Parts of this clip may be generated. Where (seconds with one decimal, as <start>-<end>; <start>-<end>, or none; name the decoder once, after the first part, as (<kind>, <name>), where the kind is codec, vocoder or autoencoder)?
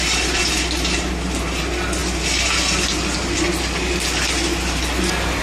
none